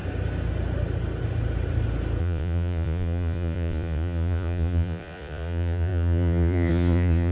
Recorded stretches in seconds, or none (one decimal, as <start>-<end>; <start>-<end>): 0.0-2.2